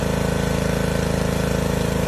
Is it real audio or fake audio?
fake